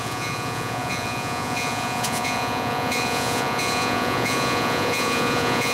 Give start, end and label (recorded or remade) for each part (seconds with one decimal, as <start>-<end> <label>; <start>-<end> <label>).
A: 0.0-5.7 remade